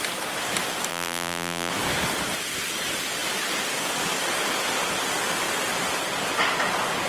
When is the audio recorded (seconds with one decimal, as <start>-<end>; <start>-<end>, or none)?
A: 0.0-0.9; 1.7-7.1